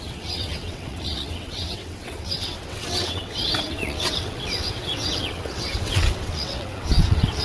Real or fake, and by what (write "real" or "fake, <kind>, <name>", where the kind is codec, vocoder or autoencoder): fake, vocoder, WaveNeXt